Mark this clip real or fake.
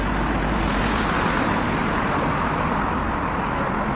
real